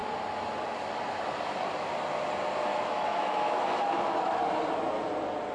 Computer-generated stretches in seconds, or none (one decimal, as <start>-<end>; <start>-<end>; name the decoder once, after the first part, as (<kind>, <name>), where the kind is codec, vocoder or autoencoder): 2.7-4.4 (autoencoder, DAC-VAE)